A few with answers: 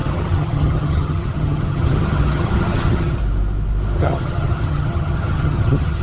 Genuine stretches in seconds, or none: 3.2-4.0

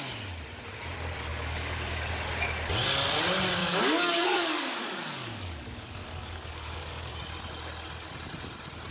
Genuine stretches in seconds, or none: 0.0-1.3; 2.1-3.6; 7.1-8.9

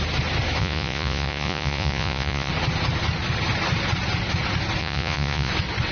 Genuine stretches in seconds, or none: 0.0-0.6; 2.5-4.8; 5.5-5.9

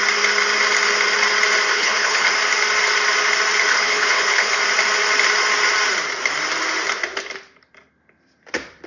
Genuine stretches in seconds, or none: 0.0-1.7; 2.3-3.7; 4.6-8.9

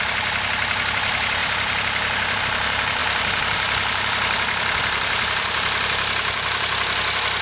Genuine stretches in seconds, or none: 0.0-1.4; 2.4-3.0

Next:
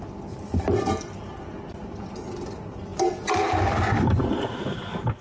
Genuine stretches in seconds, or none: 0.0-1.8; 2.5-5.2

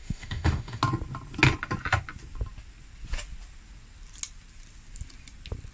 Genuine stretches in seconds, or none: 0.8-5.7